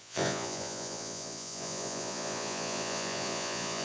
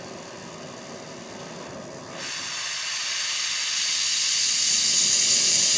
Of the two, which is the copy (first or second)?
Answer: first